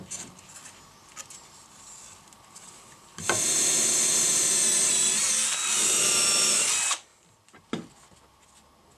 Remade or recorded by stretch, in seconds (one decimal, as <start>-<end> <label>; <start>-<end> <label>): 0.0-9.0 recorded